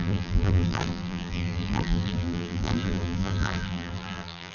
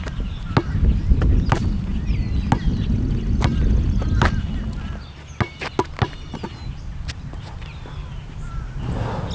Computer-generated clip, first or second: first